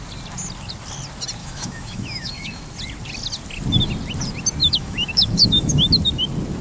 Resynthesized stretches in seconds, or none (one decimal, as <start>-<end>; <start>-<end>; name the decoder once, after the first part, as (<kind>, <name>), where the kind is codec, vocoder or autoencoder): 1.4-2.6 (autoencoder, DAC-VAE); 4.6-5.9